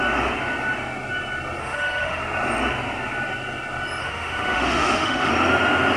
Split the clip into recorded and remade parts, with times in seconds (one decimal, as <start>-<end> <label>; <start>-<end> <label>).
0.0-1.6 recorded; 1.6-2.2 remade; 2.2-4.0 recorded; 4.0-5.3 remade; 5.3-6.0 recorded

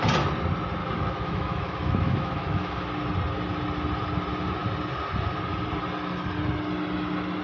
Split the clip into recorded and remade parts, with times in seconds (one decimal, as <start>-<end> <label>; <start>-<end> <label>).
0.0-0.8 recorded; 0.8-2.8 remade; 2.8-7.4 recorded